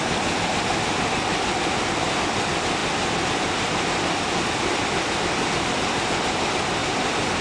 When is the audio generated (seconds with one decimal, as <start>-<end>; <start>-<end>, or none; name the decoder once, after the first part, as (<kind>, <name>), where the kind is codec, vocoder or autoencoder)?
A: none